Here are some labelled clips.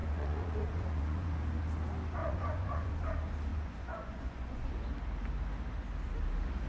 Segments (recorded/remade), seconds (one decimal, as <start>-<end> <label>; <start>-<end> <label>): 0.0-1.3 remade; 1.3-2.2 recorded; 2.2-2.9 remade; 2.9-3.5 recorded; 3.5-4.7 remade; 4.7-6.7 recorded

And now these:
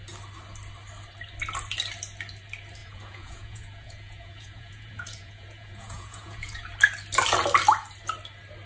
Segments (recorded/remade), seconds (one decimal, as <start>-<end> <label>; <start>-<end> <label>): 0.0-2.8 recorded; 2.8-6.7 remade; 6.7-8.7 recorded

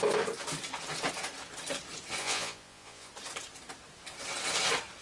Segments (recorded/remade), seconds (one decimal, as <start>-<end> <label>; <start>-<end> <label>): 0.0-2.2 recorded; 2.2-3.1 remade; 3.1-5.0 recorded